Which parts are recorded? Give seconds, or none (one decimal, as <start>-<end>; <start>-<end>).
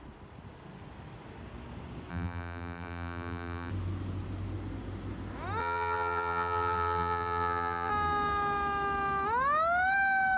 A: 0.0-2.1; 3.7-5.6; 7.9-10.4